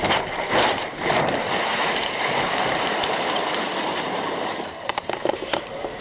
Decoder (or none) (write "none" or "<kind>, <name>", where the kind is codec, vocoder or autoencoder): vocoder, BigVGAN v2